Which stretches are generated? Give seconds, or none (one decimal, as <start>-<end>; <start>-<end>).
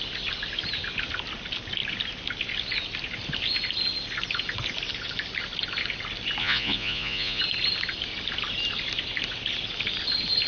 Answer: 6.4-7.4